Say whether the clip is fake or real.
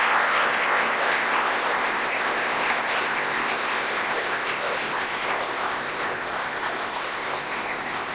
fake